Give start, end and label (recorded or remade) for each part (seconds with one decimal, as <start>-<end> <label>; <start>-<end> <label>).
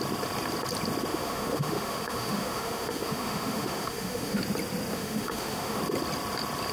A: 0.0-1.1 recorded; 1.1-4.4 remade; 4.4-4.9 recorded; 4.9-5.8 remade; 5.8-6.7 recorded